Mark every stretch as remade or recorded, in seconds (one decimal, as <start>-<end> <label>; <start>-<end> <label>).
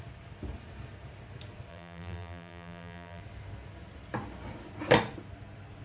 0.0-1.7 recorded; 1.7-3.2 remade; 3.2-5.8 recorded